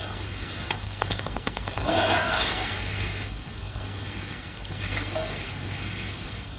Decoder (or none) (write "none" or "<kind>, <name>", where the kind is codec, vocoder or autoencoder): codec, SNAC